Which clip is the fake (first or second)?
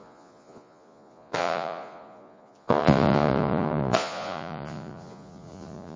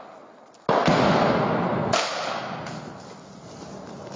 first